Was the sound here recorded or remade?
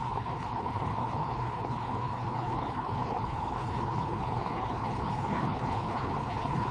remade